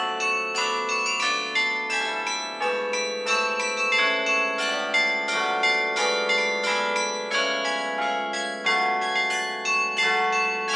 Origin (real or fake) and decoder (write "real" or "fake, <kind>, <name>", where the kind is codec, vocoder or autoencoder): real